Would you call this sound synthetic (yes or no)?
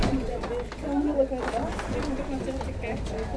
no